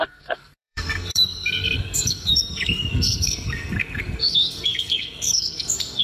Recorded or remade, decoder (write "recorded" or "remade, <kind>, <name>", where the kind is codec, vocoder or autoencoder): remade, codec, SNAC